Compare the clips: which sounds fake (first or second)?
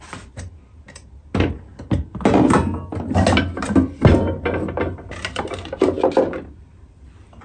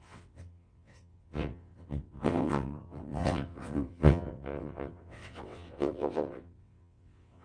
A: second